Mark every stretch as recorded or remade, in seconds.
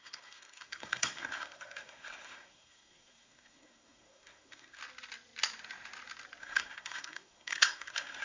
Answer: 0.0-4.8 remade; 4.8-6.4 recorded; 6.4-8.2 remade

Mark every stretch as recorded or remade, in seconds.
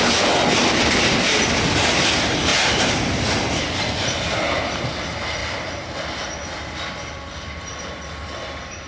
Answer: 0.0-8.9 recorded